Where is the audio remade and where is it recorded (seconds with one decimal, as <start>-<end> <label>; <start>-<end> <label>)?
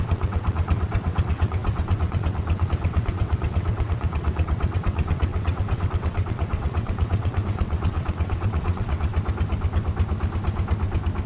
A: 0.0-9.1 remade; 9.1-11.3 recorded